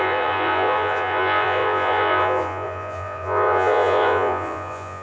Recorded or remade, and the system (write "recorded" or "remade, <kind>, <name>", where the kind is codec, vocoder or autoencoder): remade, vocoder, Vocos